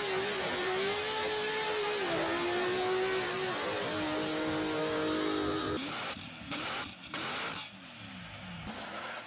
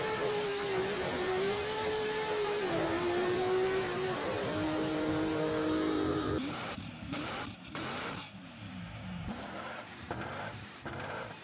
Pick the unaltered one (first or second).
first